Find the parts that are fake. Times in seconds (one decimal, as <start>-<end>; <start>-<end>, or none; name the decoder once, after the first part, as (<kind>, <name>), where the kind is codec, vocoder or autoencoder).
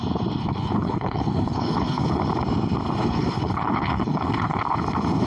0.4-2.2 (codec, HILCodec); 3.0-4.6